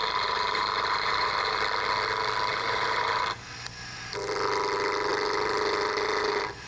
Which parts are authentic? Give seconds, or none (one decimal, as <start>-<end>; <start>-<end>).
1.6-2.5; 3.2-6.7